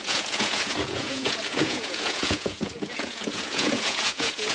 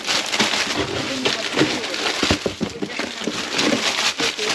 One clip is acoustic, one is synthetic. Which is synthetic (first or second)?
first